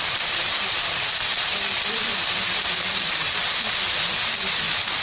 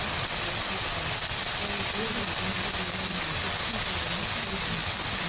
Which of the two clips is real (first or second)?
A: second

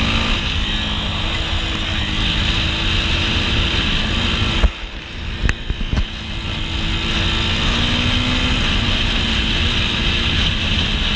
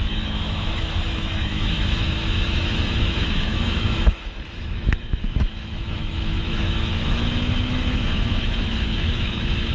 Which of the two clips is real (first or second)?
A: first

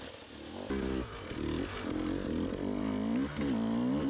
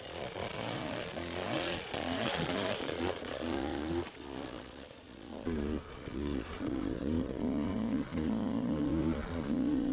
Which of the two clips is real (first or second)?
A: first